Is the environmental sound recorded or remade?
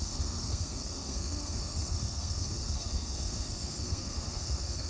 remade